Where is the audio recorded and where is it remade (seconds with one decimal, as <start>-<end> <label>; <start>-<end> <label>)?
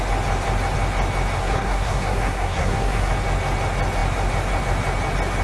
0.0-1.4 recorded; 1.4-3.1 remade; 3.1-5.4 recorded